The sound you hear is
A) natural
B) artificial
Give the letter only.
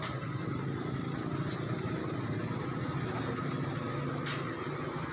A